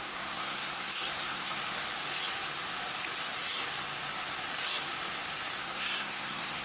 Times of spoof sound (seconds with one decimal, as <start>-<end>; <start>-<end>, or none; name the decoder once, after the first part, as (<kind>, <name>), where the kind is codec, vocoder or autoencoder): 0.0-1.6 (codec, SNAC); 5.6-6.6